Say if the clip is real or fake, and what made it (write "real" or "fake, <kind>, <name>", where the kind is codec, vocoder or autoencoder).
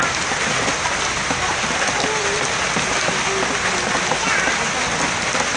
real